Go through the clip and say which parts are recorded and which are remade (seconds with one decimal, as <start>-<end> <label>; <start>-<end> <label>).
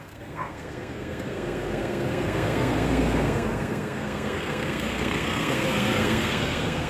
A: 0.0-6.9 remade